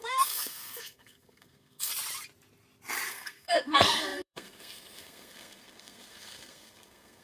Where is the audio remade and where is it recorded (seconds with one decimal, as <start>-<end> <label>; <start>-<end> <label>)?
0.0-1.9 remade; 1.9-3.1 recorded; 3.1-7.2 remade